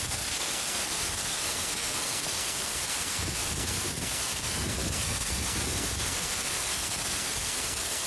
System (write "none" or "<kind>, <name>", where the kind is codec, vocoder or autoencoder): codec, SNAC